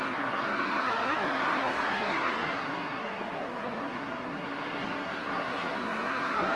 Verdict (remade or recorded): remade